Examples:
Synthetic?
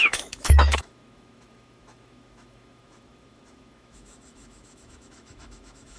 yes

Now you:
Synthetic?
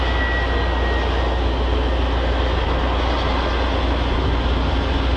no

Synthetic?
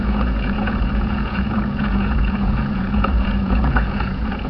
yes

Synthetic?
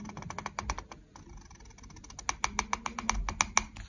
no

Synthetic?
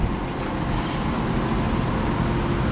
no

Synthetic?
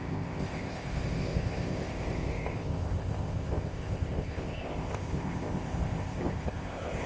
yes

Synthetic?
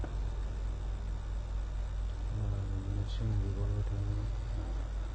no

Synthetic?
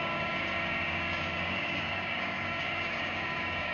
yes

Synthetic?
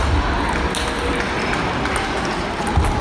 no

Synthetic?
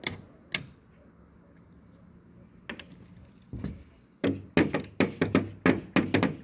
no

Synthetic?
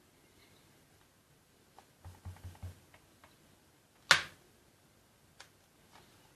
no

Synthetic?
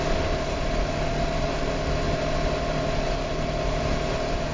no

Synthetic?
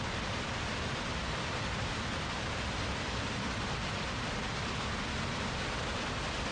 yes